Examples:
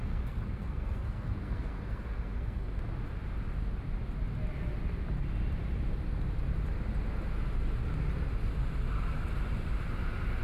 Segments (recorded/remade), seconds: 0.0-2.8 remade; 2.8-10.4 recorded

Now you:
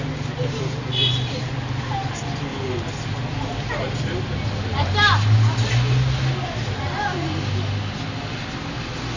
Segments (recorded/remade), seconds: 0.0-9.2 recorded

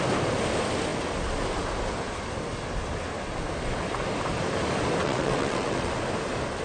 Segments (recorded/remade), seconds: 0.0-5.0 recorded; 5.0-5.9 remade; 5.9-6.6 recorded

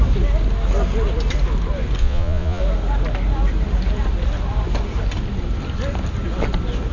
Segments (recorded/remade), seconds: 0.0-2.0 recorded; 2.0-2.6 remade; 2.6-6.9 recorded

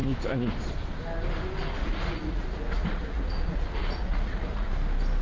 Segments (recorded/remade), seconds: 0.0-1.8 recorded; 1.8-4.7 remade; 4.7-5.2 recorded

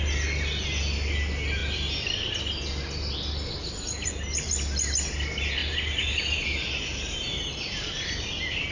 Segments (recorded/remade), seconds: 0.0-3.6 recorded; 3.6-4.5 remade; 4.5-5.6 recorded; 5.6-8.2 remade; 8.2-8.7 recorded

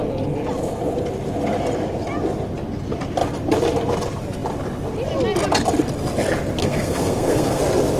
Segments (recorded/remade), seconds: 0.0-6.6 recorded; 6.6-7.6 remade; 7.6-8.0 recorded